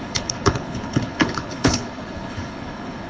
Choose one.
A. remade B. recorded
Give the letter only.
A